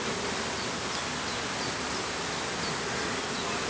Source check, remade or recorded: recorded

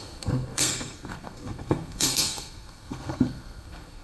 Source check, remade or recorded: remade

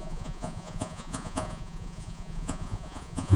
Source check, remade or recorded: remade